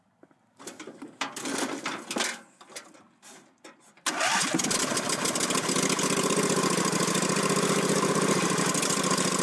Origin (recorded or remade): remade